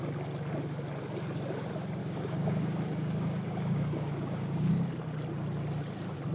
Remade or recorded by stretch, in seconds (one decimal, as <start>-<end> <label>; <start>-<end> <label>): 0.0-2.0 recorded; 2.0-4.7 remade; 4.7-6.3 recorded